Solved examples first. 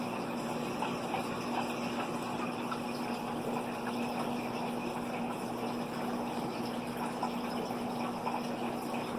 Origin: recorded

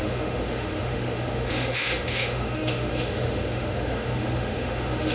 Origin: remade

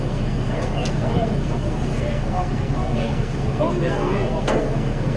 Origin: remade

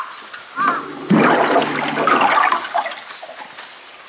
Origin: recorded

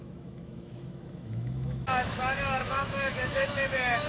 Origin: remade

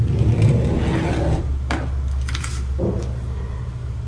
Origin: recorded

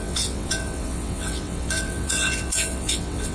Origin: remade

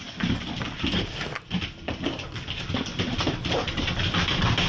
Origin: remade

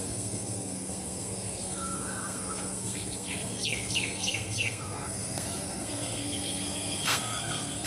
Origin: remade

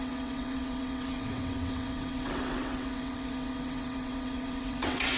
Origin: remade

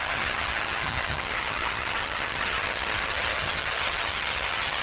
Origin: remade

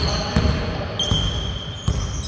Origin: recorded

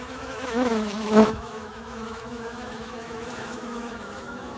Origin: remade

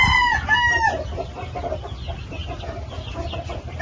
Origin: recorded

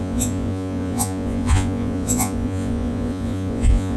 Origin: remade